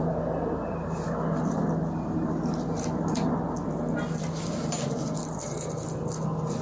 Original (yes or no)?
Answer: yes